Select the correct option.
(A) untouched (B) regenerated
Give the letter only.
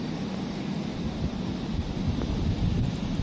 A